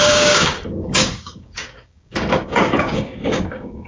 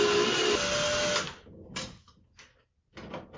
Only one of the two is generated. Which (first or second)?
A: first